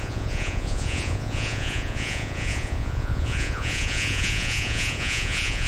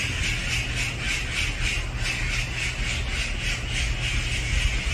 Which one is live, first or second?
second